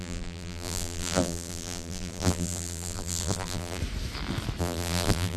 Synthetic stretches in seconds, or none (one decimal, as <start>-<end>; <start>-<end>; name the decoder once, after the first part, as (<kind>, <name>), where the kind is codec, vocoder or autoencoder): 0.0-3.8 (vocoder, BigVGAN v2); 4.6-5.4